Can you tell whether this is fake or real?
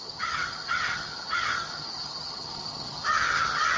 fake